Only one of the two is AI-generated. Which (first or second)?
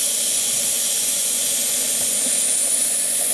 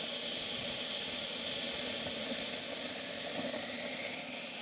first